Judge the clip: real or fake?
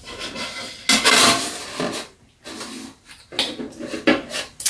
real